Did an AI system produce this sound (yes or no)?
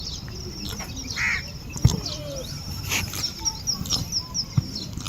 no